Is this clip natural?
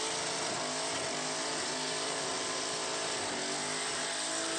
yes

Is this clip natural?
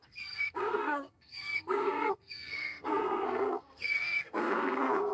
no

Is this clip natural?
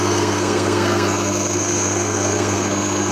no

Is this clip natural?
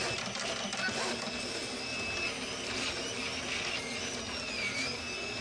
yes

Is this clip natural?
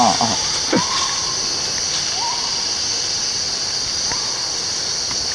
yes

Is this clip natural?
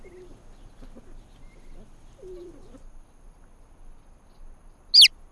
yes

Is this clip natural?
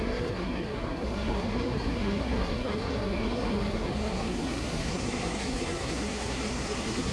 no